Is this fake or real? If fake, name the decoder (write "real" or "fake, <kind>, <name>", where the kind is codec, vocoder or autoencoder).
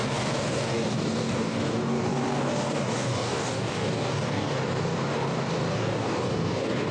fake, codec, DAC